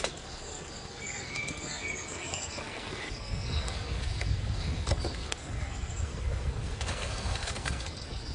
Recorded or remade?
remade